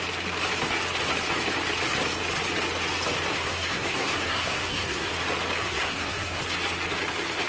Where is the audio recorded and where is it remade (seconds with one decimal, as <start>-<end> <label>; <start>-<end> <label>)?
0.0-3.3 recorded; 3.3-5.1 remade; 5.1-5.6 recorded; 5.6-6.4 remade; 6.4-7.5 recorded